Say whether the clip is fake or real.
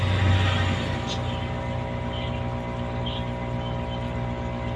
real